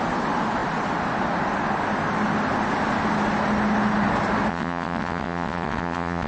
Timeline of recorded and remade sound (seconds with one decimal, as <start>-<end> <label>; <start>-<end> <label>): 0.0-4.5 recorded; 4.5-6.3 remade